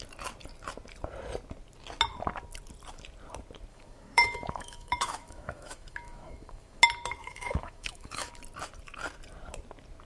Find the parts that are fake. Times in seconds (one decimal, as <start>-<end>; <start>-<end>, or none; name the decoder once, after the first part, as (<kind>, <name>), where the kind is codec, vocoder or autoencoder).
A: 3.7-6.8 (autoencoder, DAC-VAE); 7.2-8.3